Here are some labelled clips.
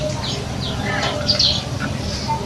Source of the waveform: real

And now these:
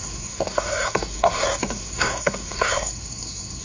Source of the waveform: fake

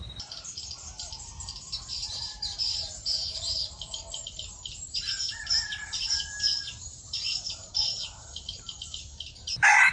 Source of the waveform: fake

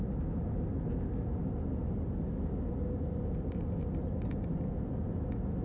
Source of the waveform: real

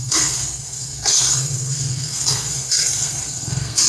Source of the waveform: fake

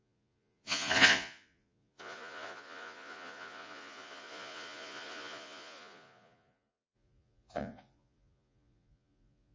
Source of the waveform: fake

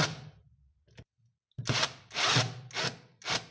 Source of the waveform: real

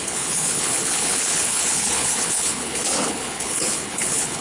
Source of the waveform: fake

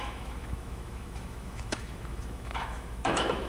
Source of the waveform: fake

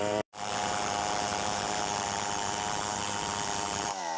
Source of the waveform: fake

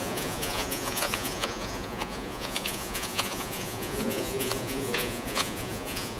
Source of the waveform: fake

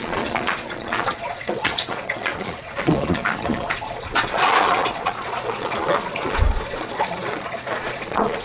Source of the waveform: fake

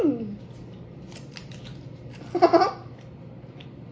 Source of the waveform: real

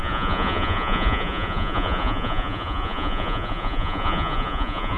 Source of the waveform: fake